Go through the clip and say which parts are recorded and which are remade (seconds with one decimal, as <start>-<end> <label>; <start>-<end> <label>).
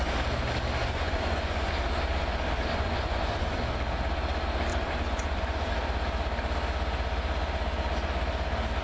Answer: 0.0-0.8 recorded; 0.8-1.7 remade; 1.7-2.7 recorded; 2.7-3.6 remade; 3.6-4.7 recorded; 4.7-5.7 remade; 5.7-8.8 recorded